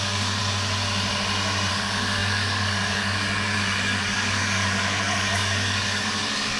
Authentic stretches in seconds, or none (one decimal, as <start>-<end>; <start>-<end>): 0.4-1.7